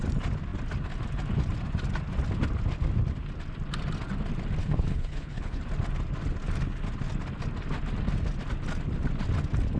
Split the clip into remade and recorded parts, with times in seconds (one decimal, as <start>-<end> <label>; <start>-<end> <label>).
0.0-4.6 recorded; 4.6-5.6 remade; 5.6-9.8 recorded